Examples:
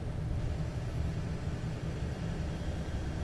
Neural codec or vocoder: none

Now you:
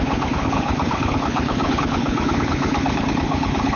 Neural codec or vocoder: codec, HILCodec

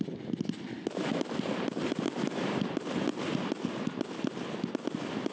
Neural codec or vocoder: none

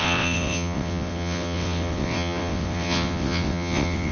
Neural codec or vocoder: vocoder, WaveNeXt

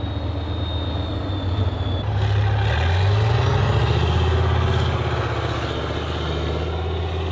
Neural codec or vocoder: none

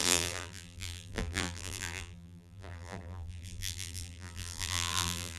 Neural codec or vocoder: vocoder, BigVGAN v2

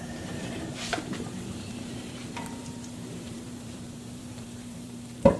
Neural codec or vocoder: vocoder, BigVGAN v2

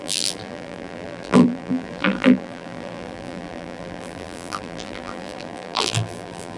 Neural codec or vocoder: vocoder, BigVGAN v2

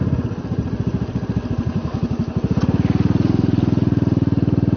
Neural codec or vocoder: none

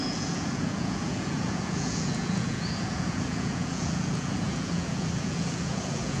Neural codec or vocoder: vocoder, Vocos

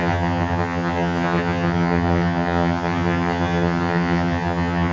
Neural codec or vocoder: vocoder, HiFi-GAN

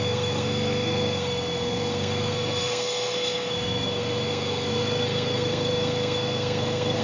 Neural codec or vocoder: codec, SNAC